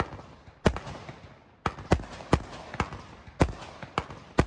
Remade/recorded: recorded